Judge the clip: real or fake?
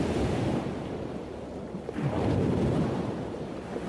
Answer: real